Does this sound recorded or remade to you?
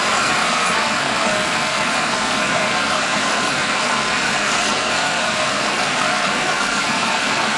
remade